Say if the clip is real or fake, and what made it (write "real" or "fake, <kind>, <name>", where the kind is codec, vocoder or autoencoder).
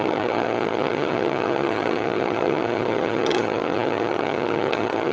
fake, vocoder, HiFi-GAN